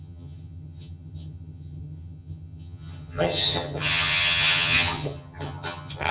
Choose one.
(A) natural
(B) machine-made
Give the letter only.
B